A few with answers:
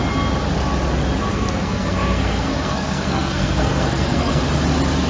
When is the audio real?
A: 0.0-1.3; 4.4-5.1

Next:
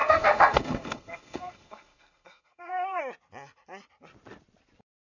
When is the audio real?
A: 3.0-5.0

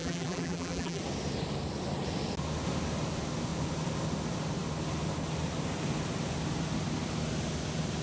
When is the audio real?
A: 1.0-8.0

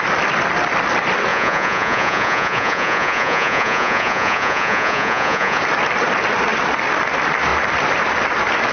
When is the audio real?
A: 0.0-1.3; 5.6-8.7

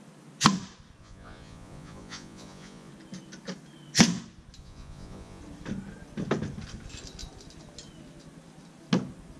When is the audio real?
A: 0.0-1.0; 2.9-4.6; 5.4-9.4

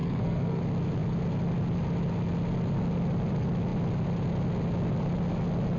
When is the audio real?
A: 0.6-5.8

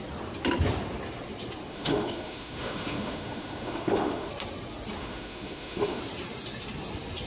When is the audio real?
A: 0.0-1.7; 4.3-5.0; 6.0-7.3

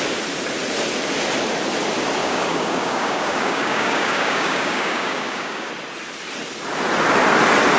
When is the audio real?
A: 0.0-2.2; 5.7-7.8